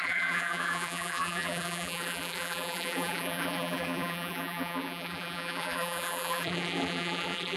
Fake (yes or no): yes